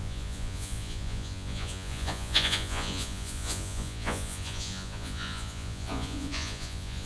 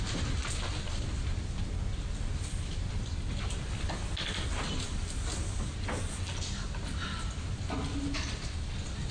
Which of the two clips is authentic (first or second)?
second